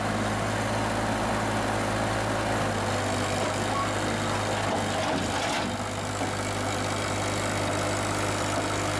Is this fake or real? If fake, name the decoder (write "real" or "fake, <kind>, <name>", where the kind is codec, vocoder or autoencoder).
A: real